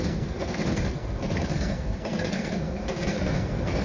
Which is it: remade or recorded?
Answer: remade